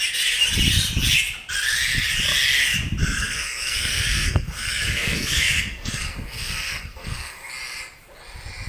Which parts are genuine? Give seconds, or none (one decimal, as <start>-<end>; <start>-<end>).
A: 0.0-3.0; 7.5-8.7

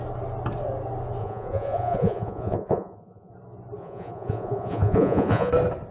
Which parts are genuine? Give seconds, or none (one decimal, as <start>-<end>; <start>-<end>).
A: 0.0-1.2; 3.3-3.8; 5.5-5.9

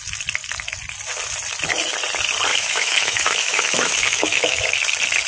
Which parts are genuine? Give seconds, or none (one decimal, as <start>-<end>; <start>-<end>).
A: 0.0-2.5; 4.7-5.3

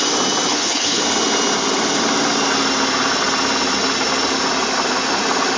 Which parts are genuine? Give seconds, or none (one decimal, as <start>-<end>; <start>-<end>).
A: 0.0-0.5; 1.0-5.6

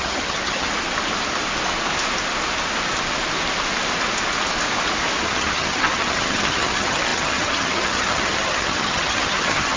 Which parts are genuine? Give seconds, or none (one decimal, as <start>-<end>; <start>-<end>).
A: 0.7-5.2